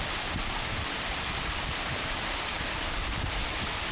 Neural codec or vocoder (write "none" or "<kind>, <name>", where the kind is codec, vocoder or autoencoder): vocoder, BigVGAN v2